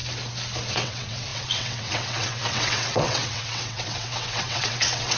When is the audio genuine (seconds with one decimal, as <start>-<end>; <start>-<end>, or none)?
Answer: 0.0-0.7